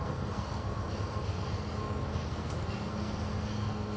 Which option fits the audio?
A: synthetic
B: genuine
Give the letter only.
A